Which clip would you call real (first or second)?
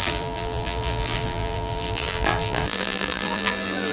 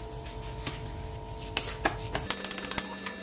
second